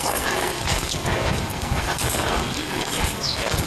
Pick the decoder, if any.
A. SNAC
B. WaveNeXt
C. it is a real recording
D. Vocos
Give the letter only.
A